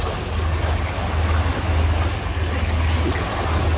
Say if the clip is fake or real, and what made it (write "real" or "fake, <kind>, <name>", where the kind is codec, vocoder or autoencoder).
real